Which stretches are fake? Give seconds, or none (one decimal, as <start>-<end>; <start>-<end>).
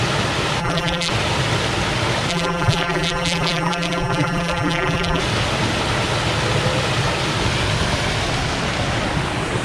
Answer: 0.6-1.1; 2.3-5.2